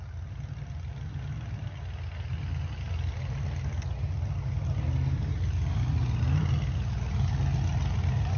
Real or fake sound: real